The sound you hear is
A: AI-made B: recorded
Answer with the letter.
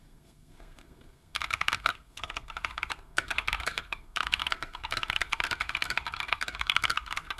A